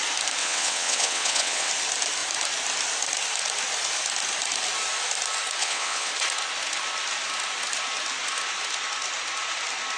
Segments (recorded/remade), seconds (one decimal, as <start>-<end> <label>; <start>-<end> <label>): 0.0-0.4 recorded; 0.4-1.7 remade; 1.7-5.6 recorded; 5.6-6.1 remade; 6.1-10.0 recorded